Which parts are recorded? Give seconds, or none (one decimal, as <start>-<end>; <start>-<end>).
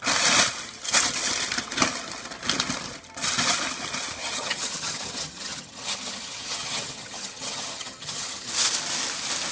0.0-4.2; 8.5-9.5